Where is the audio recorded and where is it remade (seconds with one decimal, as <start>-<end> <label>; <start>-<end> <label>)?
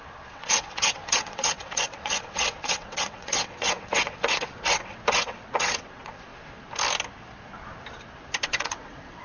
0.0-6.3 remade; 6.3-8.5 recorded; 8.5-9.2 remade